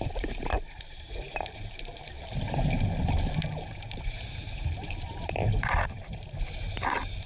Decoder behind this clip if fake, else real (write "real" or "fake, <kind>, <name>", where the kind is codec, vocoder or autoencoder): fake, vocoder, BigVGAN v2